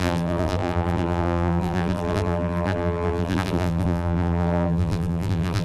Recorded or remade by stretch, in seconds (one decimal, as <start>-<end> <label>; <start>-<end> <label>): 0.0-5.6 remade